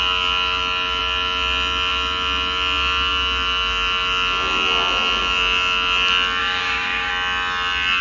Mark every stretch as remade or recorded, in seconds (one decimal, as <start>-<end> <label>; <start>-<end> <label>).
0.0-6.4 recorded; 6.4-7.1 remade; 7.1-8.0 recorded